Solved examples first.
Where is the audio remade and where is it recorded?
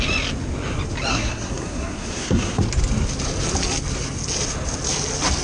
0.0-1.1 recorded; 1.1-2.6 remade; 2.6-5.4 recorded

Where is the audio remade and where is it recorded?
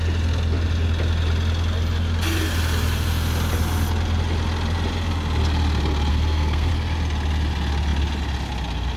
0.0-6.1 recorded; 6.1-6.7 remade; 6.7-9.0 recorded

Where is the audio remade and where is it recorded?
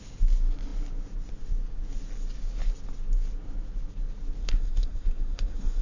0.0-4.4 recorded; 4.4-5.8 remade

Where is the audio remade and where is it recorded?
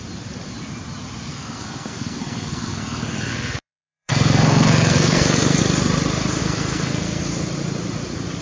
0.0-1.3 recorded; 1.3-5.6 remade; 5.6-6.4 recorded; 6.4-7.2 remade; 7.2-8.4 recorded